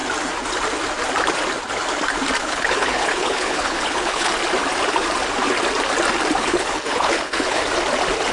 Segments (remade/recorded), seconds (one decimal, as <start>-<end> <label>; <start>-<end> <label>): 0.0-2.4 recorded; 2.4-4.3 remade; 4.3-6.4 recorded; 6.4-7.6 remade; 7.6-8.3 recorded